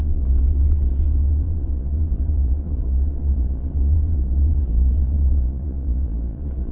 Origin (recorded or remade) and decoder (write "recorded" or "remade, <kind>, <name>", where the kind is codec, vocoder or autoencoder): remade, vocoder, Vocos